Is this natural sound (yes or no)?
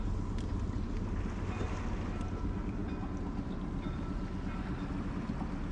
yes